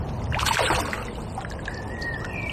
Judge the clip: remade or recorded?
recorded